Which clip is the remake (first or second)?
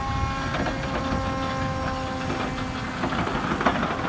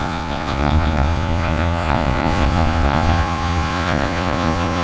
second